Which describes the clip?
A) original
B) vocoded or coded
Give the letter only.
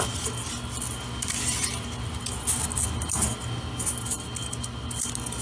A